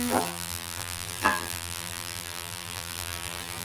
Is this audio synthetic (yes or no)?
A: yes